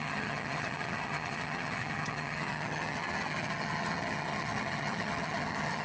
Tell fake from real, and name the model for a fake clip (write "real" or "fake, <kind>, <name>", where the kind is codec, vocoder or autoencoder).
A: fake, vocoder, HiFi-GAN